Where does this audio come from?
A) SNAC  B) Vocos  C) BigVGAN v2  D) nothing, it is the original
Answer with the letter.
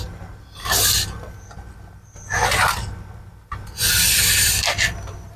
D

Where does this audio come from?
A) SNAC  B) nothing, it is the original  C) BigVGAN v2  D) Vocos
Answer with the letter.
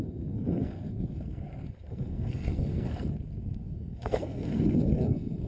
A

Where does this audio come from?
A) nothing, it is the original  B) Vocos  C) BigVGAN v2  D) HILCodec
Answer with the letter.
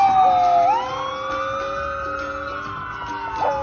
A